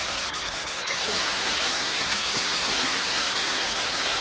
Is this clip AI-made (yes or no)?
yes